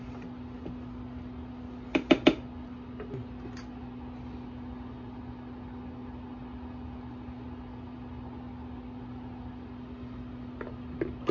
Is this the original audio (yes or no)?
yes